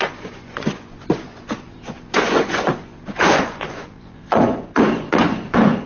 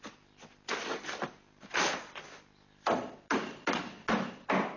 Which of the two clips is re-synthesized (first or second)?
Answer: first